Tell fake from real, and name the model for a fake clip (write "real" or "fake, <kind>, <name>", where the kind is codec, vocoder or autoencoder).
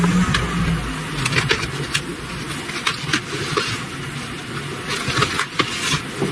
real